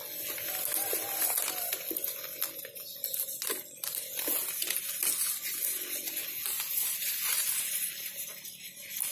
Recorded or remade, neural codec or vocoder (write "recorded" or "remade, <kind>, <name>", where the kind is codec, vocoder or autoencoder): recorded